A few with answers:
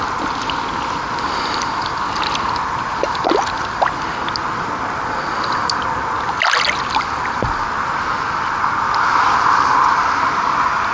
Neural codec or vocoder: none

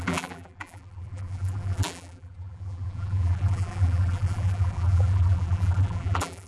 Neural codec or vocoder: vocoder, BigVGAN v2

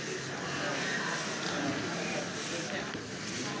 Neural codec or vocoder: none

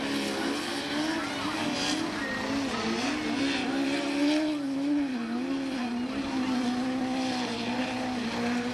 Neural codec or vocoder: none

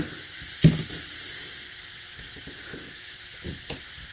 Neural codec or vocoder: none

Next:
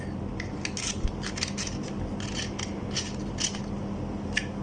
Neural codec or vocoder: none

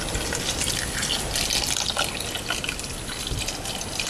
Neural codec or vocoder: none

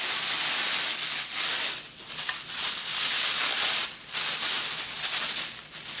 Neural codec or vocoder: none